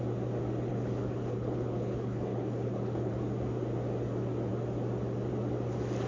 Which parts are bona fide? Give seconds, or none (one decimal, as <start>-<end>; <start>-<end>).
0.0-0.7; 3.1-6.1